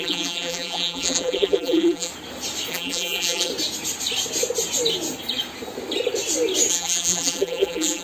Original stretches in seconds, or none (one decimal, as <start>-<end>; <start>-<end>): 2.1-2.7; 3.5-6.7